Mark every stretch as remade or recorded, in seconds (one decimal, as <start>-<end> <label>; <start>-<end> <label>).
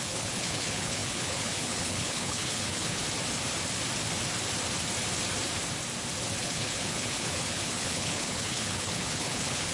0.0-3.0 remade; 3.0-6.4 recorded; 6.4-9.7 remade